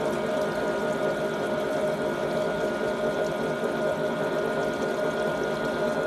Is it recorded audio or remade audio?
recorded